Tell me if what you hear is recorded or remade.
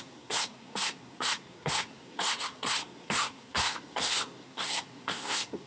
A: remade